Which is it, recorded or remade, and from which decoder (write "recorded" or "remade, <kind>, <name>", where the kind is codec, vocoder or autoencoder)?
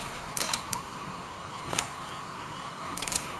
remade, codec, SNAC